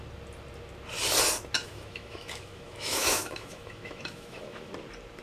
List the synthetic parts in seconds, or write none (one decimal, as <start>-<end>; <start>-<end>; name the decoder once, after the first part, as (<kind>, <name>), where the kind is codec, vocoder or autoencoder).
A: 1.6-4.7 (autoencoder, DAC-VAE)